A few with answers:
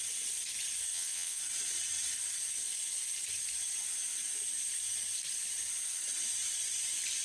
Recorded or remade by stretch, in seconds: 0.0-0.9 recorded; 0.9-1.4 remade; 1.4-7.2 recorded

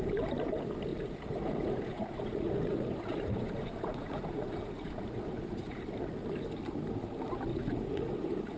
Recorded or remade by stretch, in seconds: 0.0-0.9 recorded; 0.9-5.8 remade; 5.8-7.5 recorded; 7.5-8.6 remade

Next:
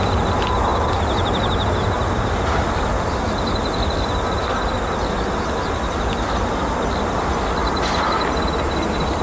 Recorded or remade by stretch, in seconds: 0.0-9.2 recorded

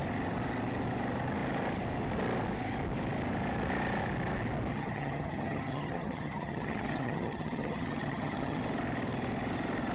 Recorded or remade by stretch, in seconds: 0.0-4.7 recorded; 4.7-8.6 remade; 8.6-9.9 recorded

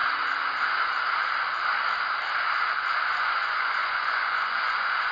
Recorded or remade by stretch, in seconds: 0.0-3.1 recorded; 3.1-5.1 remade

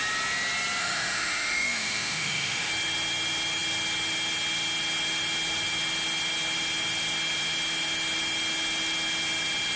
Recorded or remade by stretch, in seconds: 0.0-0.8 recorded; 0.8-2.7 remade; 2.7-9.8 recorded

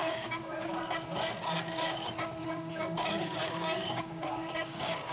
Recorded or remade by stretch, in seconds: 0.0-0.7 remade; 0.7-2.4 recorded; 2.4-5.1 remade

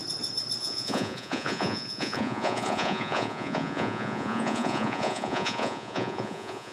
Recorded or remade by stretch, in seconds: 0.0-0.6 recorded; 0.6-6.7 remade